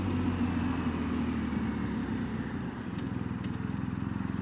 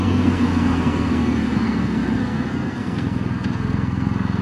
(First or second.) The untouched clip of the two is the first